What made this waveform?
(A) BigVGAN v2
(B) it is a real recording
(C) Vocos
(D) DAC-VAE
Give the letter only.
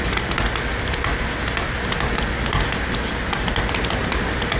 B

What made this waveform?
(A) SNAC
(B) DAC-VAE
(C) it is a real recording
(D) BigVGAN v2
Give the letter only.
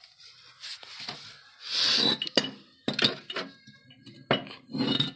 C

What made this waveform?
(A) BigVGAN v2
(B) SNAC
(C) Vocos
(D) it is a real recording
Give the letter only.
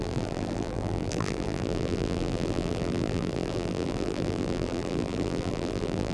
A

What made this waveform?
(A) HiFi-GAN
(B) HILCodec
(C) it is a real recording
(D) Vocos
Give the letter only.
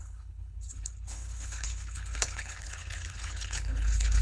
B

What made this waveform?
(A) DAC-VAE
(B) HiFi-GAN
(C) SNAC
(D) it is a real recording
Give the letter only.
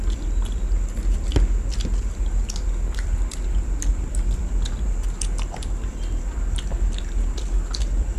D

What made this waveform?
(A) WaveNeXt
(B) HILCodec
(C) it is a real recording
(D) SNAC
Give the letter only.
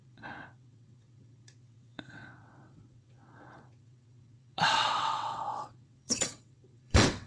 A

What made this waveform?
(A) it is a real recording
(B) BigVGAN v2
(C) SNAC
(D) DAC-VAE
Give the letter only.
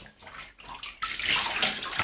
A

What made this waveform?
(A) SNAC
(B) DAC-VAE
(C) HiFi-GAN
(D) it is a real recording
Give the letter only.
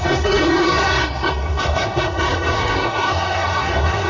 A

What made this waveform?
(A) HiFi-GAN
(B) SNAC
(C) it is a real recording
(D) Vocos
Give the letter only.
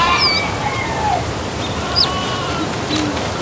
C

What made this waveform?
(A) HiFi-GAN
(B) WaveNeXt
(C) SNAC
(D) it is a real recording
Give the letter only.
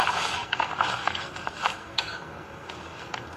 C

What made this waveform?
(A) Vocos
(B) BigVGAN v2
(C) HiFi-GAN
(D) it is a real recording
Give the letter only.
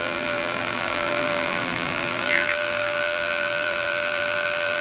B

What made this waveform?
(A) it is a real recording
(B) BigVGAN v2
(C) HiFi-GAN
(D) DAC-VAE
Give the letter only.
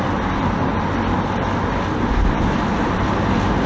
A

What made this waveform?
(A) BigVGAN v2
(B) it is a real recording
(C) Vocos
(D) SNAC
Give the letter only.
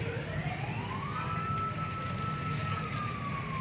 B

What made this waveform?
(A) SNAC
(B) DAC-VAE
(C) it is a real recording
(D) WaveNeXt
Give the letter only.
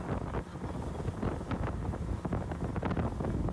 C